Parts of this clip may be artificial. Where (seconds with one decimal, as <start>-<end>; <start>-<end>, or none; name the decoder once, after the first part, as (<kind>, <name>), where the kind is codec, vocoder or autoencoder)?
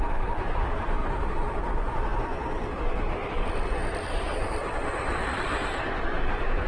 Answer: 0.0-1.0 (vocoder, BigVGAN v2); 4.1-6.7